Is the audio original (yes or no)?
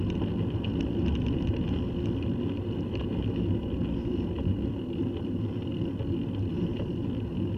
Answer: yes